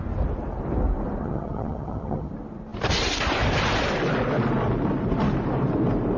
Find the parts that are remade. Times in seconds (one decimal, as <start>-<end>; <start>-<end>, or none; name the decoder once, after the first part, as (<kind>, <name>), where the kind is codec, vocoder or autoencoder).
1.2-2.3 (vocoder, HiFi-GAN)